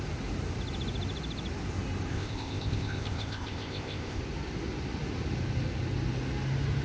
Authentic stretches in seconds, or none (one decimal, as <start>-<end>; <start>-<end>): 0.0-2.1; 4.2-6.8